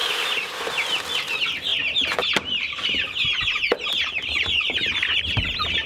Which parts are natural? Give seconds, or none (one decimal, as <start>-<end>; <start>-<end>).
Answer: 0.7-1.7; 5.2-5.9